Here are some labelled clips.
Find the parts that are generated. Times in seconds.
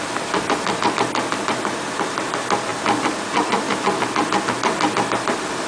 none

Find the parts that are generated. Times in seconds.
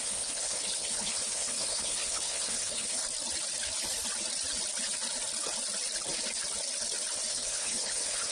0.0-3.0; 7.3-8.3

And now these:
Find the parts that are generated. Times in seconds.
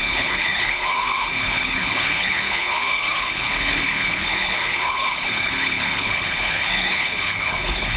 0.0-8.0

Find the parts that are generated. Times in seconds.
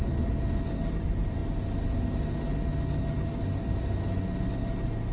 none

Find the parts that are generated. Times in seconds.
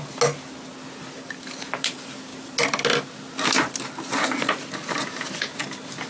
none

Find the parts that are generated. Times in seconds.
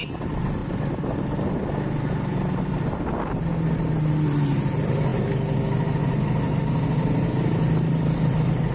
none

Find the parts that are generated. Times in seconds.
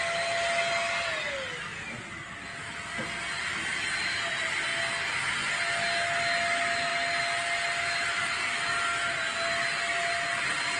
none